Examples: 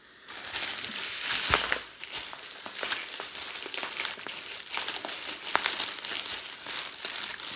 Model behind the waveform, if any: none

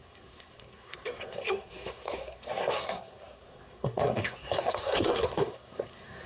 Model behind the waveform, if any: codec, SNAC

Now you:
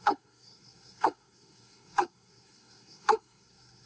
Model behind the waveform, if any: codec, SNAC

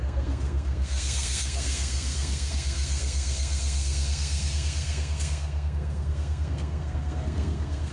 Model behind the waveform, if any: codec, SNAC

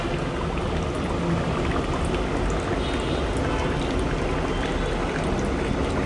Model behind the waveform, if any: none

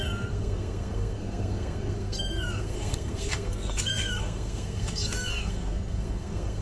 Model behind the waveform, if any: codec, SNAC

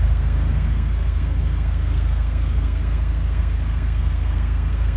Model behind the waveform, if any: codec, SNAC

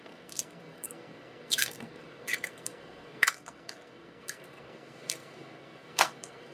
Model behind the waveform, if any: codec, SNAC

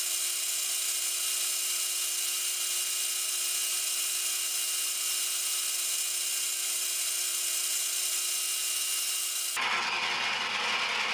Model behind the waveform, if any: none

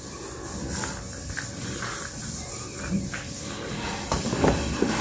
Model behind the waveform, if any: none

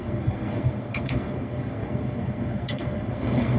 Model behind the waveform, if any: codec, SNAC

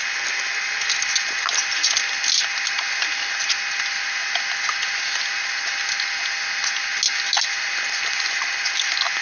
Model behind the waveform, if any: none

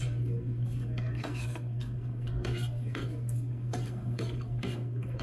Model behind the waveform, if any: codec, SNAC